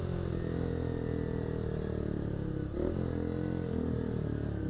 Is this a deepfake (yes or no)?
no